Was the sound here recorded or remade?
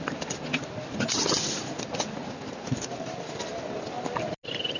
recorded